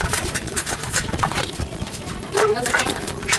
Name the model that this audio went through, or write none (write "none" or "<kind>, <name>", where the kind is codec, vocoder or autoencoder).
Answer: vocoder, Vocos